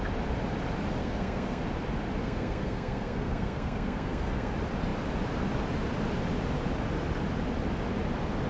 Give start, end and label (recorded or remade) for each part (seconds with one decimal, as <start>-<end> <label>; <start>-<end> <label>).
0.0-1.0 recorded; 1.0-1.6 remade; 1.6-2.2 recorded; 2.2-4.5 remade; 4.5-8.5 recorded